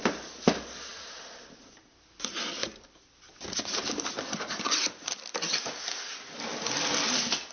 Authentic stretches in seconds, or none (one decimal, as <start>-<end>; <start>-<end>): 0.0-7.5